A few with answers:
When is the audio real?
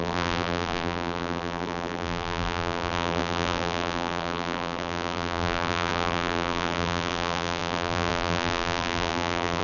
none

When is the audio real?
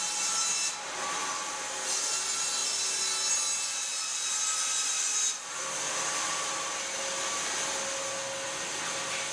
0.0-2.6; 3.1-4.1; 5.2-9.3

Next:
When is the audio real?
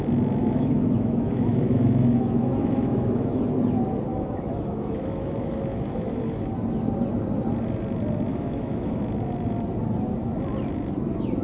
0.0-0.4; 3.4-4.1; 6.5-8.3; 9.0-11.4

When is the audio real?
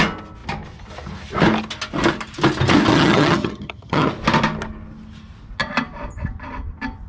0.0-2.9; 4.1-7.1